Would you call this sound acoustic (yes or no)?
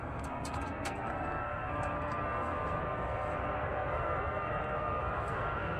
no